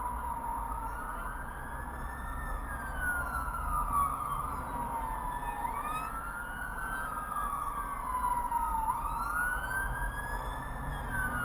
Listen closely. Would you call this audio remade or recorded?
recorded